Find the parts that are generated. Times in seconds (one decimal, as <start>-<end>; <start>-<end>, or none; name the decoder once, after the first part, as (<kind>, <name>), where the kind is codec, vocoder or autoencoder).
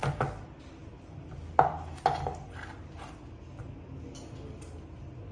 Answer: none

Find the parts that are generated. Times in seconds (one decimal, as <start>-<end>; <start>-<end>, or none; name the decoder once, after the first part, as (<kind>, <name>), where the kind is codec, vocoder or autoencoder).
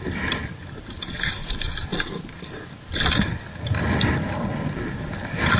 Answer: none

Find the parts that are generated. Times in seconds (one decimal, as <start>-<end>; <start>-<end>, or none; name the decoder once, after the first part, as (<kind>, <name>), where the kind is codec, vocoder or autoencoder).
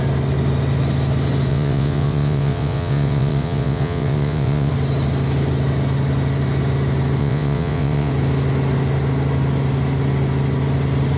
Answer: 1.5-4.7 (vocoder, WaveNeXt); 7.2-8.1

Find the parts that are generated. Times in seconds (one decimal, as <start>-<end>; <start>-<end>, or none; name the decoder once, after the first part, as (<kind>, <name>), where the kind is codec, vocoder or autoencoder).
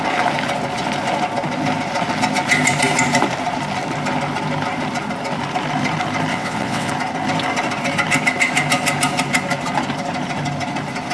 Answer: 6.3-6.9 (vocoder, WaveNeXt)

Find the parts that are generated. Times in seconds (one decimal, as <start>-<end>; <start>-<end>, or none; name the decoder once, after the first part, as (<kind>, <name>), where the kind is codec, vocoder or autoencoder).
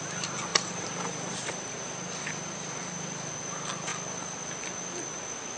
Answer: none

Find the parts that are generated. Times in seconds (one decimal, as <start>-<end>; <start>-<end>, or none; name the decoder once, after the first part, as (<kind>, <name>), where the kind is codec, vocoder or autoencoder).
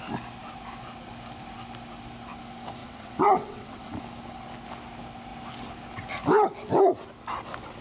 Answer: 2.8-4.0 (vocoder, WaveNeXt)